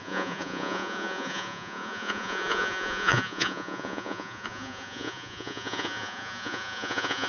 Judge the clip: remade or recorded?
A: remade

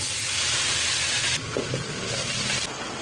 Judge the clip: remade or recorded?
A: recorded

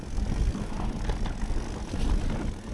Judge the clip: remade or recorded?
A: recorded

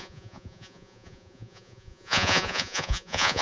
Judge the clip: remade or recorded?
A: remade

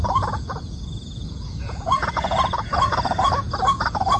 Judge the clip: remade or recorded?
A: remade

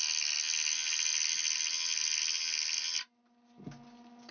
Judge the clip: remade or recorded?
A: recorded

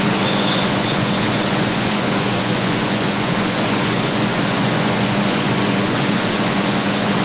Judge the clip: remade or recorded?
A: remade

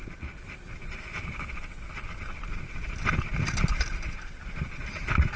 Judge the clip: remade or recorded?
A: recorded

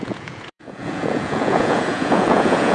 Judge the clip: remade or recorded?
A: remade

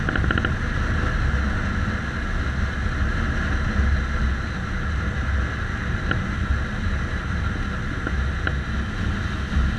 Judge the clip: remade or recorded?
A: recorded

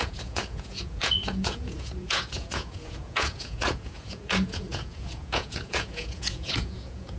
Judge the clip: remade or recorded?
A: remade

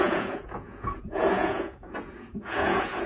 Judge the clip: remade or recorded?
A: remade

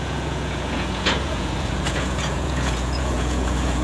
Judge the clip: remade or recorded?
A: remade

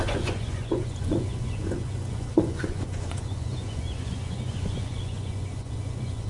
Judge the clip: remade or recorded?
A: remade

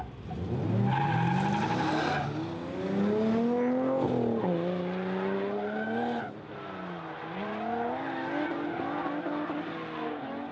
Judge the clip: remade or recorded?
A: recorded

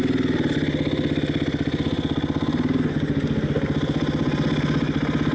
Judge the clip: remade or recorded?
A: recorded